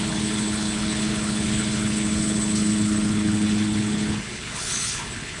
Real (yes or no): no